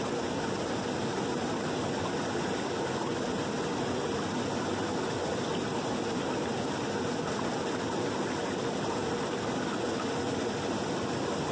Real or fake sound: real